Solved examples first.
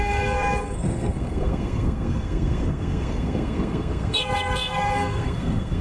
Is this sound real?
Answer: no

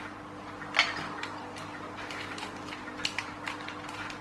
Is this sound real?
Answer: yes